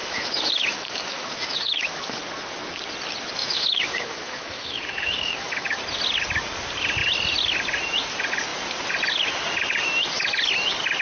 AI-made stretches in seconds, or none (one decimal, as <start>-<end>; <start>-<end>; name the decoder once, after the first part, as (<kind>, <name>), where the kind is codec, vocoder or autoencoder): 0.0-2.2 (autoencoder, DAC-VAE); 3.4-5.8